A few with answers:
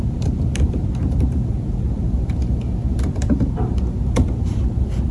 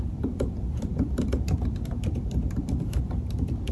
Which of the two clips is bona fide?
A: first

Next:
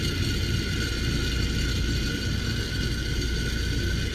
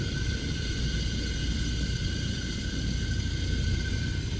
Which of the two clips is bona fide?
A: first